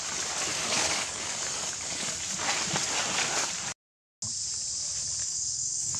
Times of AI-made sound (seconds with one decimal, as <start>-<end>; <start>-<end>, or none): 0.5-2.2; 5.2-6.0